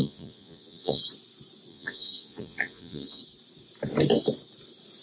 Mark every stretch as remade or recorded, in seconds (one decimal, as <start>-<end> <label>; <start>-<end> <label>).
0.0-1.0 remade; 1.0-1.7 recorded; 1.7-3.2 remade; 3.2-5.0 recorded